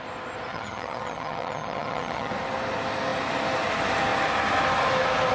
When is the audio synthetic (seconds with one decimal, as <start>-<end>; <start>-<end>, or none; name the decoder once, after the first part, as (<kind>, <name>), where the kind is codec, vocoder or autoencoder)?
0.5-2.3 (vocoder, HiFi-GAN)